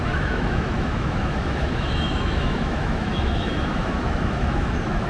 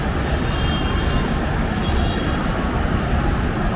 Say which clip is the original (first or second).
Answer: second